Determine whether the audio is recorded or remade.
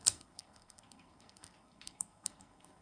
remade